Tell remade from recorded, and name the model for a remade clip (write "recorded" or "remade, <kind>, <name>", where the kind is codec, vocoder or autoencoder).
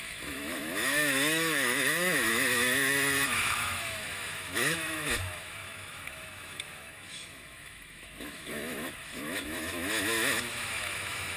remade, autoencoder, DAC-VAE